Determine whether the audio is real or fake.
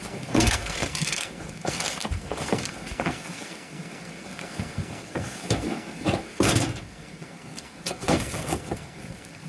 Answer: fake